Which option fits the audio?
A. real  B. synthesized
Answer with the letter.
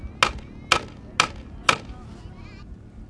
A